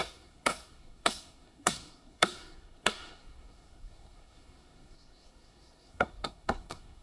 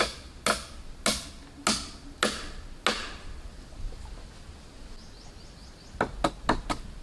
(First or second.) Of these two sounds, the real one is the second